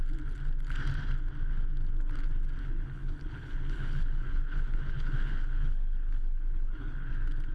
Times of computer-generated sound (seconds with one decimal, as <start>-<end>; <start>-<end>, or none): 2.6-7.1